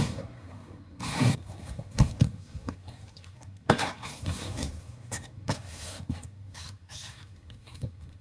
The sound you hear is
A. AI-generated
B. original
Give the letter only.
A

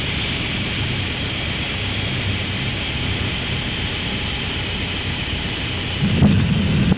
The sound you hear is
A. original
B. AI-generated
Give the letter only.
A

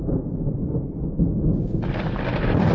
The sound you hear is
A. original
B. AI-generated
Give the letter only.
A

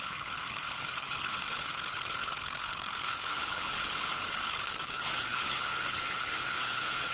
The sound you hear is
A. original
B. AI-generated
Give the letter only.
B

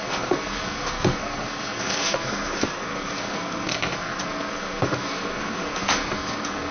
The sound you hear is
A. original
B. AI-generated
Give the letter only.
B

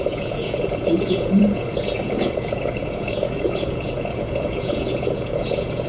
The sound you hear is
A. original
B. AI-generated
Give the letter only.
B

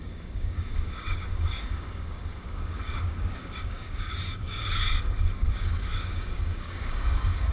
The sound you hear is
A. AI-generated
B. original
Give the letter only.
A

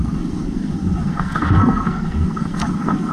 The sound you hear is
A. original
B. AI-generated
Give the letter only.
B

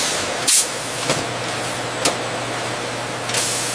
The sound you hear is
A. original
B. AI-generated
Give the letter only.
A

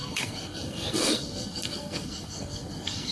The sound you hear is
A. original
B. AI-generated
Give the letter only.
B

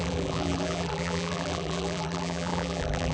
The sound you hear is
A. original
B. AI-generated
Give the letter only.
B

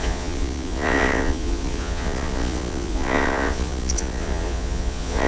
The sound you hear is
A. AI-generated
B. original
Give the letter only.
A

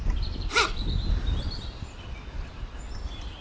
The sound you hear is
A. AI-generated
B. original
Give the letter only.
B